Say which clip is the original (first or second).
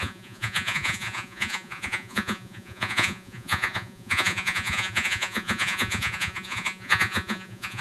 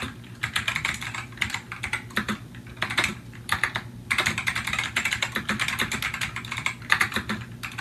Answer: second